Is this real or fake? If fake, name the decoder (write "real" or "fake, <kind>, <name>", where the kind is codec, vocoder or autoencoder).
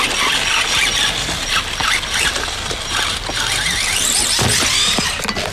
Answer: real